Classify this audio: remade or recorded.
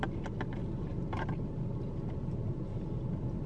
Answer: recorded